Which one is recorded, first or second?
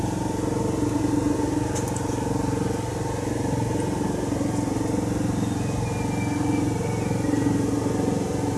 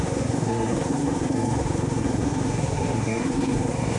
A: first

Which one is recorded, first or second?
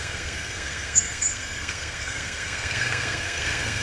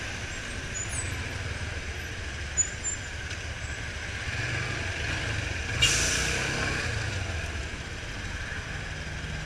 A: second